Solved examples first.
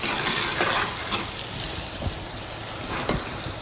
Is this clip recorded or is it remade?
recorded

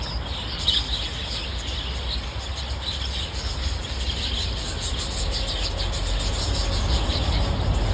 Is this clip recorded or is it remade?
recorded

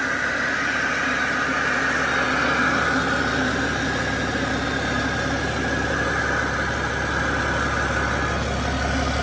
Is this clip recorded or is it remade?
recorded